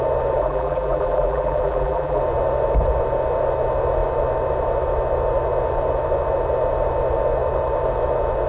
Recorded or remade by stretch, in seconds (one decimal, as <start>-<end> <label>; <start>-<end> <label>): 0.0-0.4 recorded; 0.4-2.2 remade; 2.2-8.5 recorded